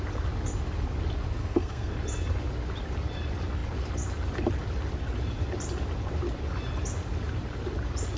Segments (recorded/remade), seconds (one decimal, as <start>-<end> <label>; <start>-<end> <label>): 0.0-1.4 recorded; 1.4-1.9 remade; 1.9-8.2 recorded